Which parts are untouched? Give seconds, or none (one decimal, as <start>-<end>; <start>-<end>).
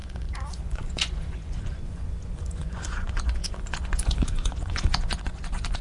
none